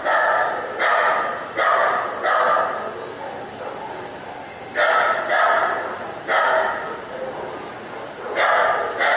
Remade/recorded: recorded